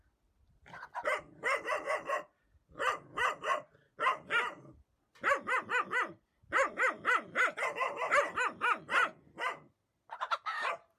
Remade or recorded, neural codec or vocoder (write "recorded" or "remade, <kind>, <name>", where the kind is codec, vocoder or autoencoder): recorded